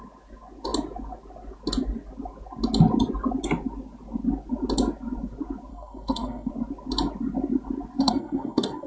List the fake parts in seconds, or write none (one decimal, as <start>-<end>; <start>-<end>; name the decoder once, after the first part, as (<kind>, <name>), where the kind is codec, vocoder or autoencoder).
5.7-6.5 (codec, SNAC); 8.0-8.9